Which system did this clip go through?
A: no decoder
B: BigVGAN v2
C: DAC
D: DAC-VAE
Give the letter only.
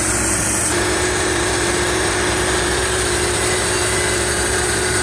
B